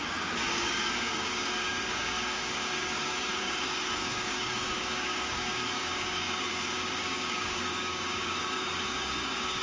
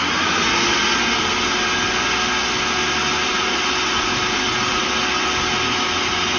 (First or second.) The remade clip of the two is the first